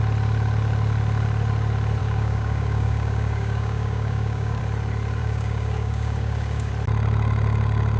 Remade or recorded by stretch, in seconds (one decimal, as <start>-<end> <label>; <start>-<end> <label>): 0.0-2.0 recorded; 2.0-4.6 remade; 4.6-5.2 recorded; 5.2-6.7 remade; 6.7-8.0 recorded